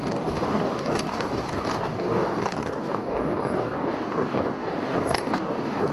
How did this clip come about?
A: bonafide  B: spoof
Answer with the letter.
B